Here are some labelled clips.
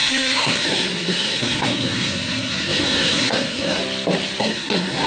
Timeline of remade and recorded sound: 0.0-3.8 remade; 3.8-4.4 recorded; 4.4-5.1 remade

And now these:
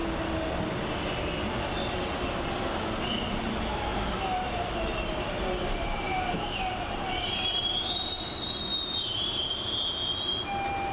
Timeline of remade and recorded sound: 0.0-3.4 recorded; 3.4-10.9 remade

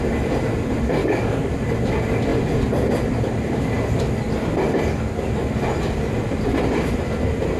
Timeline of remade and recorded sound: 0.0-1.0 recorded; 1.0-1.5 remade; 1.5-7.6 recorded

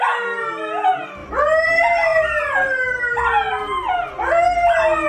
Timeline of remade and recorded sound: 0.0-5.1 recorded

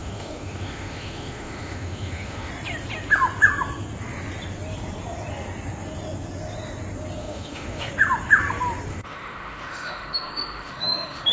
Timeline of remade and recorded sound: 0.0-2.5 remade; 2.5-7.2 recorded; 7.2-7.9 remade; 7.9-8.9 recorded; 8.9-11.3 remade

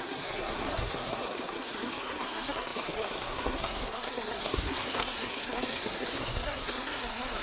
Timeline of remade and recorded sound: 0.0-7.4 remade

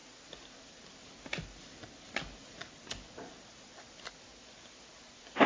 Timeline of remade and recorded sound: 0.0-5.5 recorded